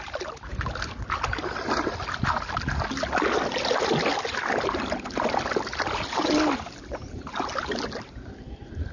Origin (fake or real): real